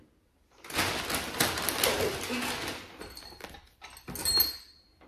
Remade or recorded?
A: recorded